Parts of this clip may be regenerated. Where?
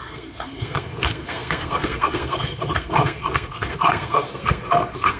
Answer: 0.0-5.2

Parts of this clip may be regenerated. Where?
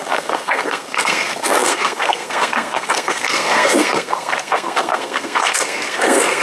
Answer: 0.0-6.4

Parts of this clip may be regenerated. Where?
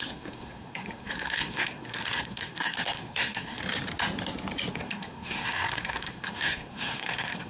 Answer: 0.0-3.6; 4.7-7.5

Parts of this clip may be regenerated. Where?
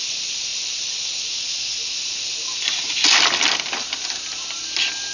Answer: none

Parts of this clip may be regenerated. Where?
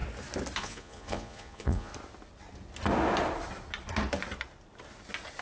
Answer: 0.6-1.9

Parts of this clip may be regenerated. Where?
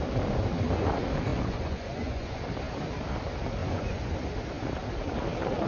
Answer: 1.3-2.4; 3.6-4.1